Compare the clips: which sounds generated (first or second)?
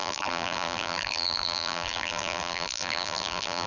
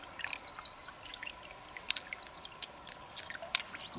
first